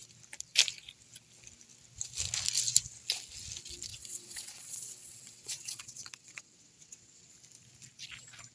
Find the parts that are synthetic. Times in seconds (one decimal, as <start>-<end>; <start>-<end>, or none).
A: 3.9-7.3